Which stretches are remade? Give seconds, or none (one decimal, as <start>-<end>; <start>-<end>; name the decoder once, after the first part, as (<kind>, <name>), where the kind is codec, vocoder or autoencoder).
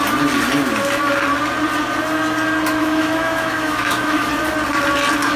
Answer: 2.8-4.3 (autoencoder, DAC-VAE)